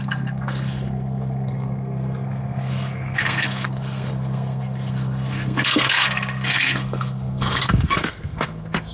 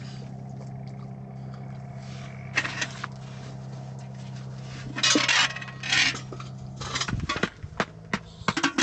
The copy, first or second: first